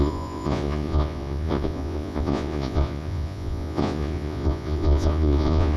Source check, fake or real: fake